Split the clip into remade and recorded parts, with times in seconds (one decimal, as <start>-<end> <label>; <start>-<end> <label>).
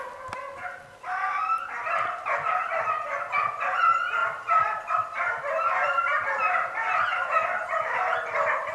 0.0-4.2 recorded; 4.2-7.3 remade; 7.3-8.7 recorded